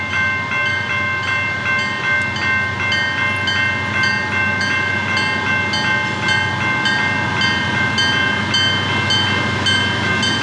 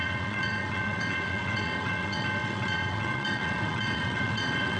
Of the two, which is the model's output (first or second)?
second